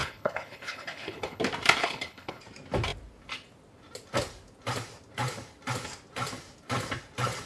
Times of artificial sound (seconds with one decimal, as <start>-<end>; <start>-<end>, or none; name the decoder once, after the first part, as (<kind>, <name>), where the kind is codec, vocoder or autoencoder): 0.0-1.4 (codec, HILCodec); 1.8-2.4